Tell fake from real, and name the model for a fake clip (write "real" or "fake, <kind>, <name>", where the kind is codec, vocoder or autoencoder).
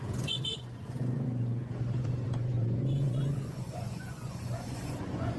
fake, vocoder, Vocos